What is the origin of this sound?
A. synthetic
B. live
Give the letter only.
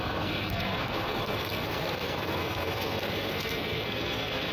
A